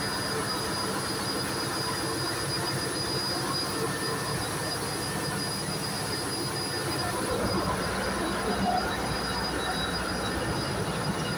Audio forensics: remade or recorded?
recorded